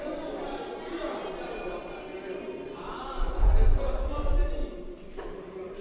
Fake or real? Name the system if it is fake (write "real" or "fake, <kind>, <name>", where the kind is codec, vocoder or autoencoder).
real